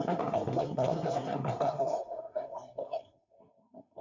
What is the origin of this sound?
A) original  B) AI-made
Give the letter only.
B